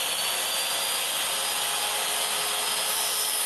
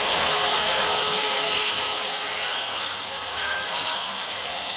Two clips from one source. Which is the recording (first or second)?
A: first